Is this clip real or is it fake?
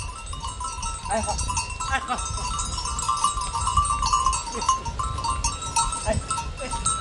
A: real